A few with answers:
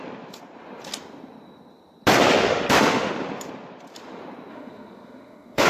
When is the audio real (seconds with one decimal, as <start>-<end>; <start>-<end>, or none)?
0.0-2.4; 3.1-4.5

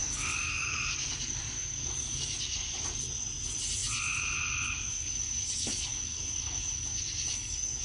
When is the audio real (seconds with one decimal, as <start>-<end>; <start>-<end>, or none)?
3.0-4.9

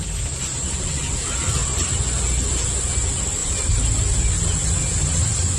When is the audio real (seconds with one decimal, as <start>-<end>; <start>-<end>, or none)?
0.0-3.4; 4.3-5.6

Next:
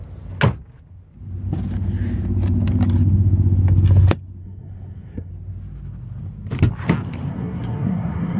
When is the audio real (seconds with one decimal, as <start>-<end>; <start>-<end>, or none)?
0.0-4.4; 5.3-7.3

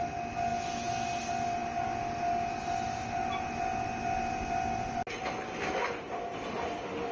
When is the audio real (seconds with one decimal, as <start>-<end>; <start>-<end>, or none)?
0.0-7.1